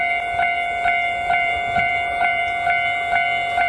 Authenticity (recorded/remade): remade